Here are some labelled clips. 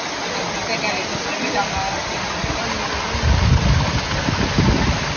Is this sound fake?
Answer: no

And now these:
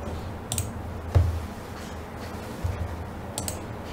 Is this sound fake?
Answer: no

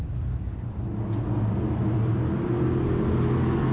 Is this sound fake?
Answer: no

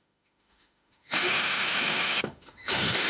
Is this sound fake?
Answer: yes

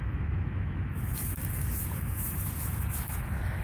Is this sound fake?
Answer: yes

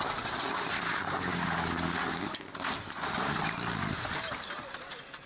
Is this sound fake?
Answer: no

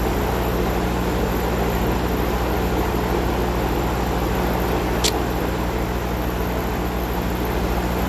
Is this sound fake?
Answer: no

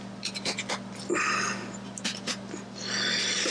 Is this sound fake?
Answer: no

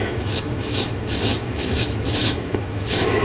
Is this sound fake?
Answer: yes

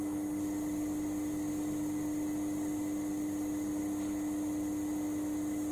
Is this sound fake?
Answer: no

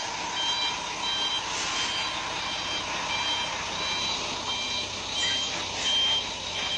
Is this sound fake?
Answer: no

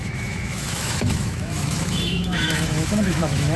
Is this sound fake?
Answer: yes